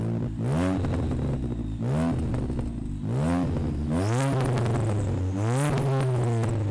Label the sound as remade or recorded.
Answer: recorded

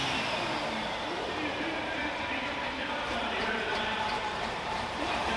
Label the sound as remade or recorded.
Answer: remade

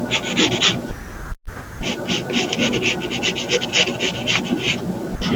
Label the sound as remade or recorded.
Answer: recorded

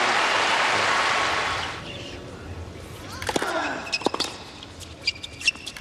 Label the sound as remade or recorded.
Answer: remade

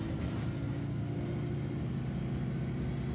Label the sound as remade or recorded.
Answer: recorded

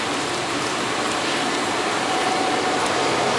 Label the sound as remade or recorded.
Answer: remade